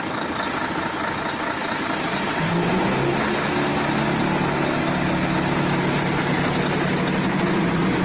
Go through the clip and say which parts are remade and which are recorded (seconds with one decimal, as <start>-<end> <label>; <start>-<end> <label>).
0.0-8.0 recorded